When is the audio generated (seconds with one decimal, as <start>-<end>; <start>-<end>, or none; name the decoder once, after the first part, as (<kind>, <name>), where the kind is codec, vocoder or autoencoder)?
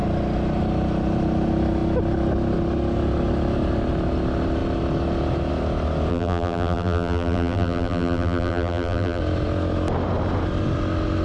6.1-9.2 (vocoder, BigVGAN v2)